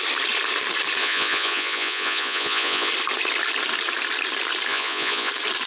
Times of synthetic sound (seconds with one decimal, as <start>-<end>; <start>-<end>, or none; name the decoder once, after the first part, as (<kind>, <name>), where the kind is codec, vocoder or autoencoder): 1.0-2.9 (vocoder, Vocos); 4.7-5.3